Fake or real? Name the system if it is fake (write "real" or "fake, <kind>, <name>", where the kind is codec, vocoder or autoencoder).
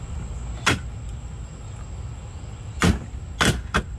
real